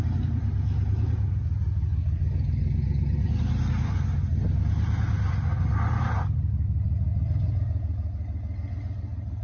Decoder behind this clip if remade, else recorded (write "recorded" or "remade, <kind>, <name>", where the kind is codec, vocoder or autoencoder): recorded